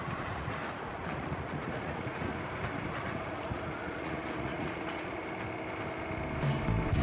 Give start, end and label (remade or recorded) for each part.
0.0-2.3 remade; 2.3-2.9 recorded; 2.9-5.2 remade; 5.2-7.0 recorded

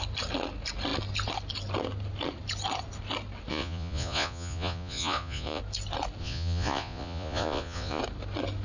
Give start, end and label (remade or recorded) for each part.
0.0-3.5 recorded; 3.5-5.6 remade; 5.6-6.2 recorded; 6.2-8.0 remade; 8.0-8.6 recorded

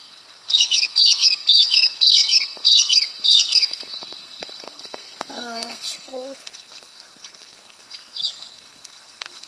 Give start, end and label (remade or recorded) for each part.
0.0-9.5 remade